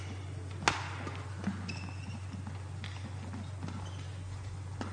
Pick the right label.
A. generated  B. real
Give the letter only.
B